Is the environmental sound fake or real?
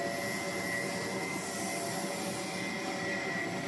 real